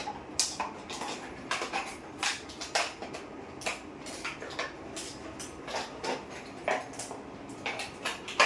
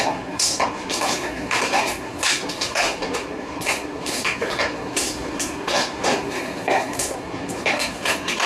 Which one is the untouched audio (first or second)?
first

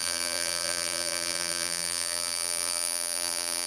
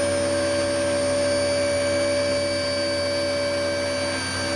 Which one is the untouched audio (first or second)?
second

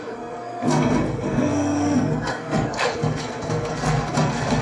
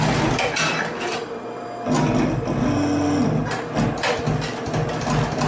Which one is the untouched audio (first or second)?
second